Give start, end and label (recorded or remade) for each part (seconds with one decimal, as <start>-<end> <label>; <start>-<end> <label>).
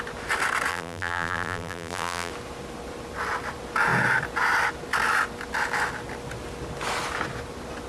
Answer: 0.0-0.7 recorded; 0.7-2.3 remade; 2.3-7.9 recorded